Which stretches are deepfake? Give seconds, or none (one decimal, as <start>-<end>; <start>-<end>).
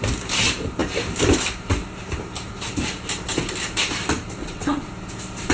4.4-4.9